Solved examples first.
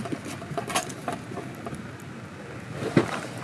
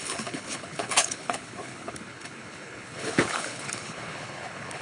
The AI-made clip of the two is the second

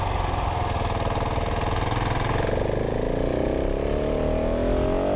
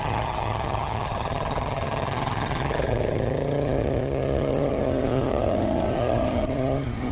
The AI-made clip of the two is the second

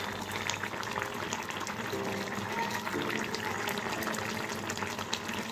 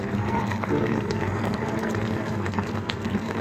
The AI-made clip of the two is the second